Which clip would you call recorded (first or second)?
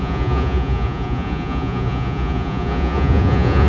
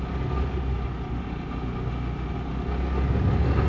second